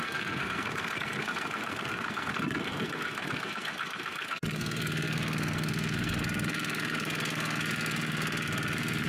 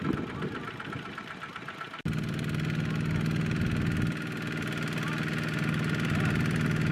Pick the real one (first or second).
second